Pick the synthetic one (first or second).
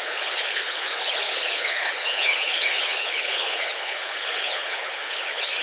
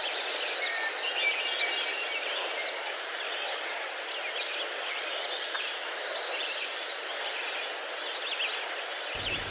first